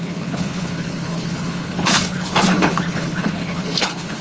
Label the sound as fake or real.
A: fake